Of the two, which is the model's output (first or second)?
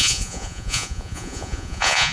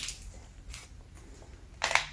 first